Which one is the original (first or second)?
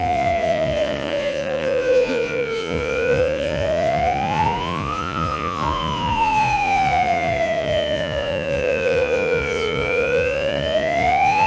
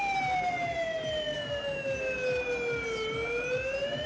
second